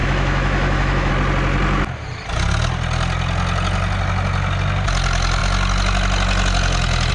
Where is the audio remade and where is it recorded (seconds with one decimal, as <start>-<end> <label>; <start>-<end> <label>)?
0.0-1.1 remade; 1.1-7.1 recorded